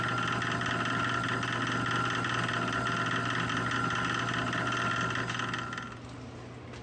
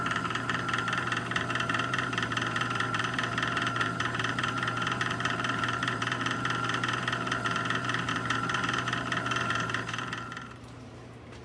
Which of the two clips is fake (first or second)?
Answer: second